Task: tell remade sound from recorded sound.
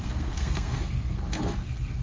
remade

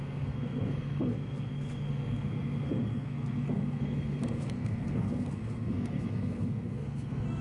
remade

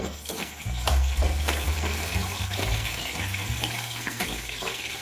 remade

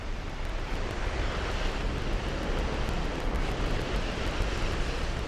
recorded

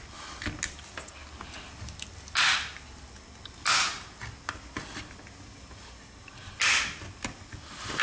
recorded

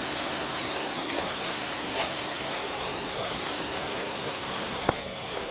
remade